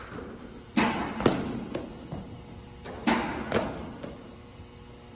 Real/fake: real